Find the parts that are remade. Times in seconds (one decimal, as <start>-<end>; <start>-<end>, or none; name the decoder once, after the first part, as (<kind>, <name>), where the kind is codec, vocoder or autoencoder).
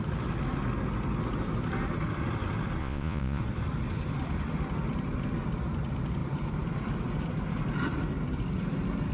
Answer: 2.8-3.4 (vocoder, Vocos)